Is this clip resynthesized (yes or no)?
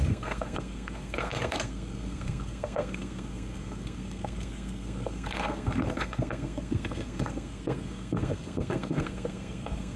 yes